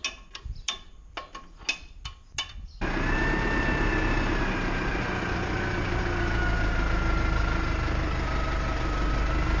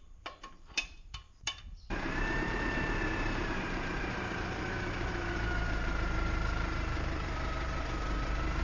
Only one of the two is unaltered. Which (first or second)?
first